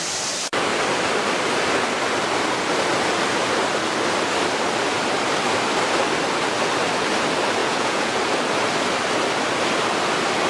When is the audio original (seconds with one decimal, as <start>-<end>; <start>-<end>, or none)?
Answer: 0.0-7.6; 8.2-10.5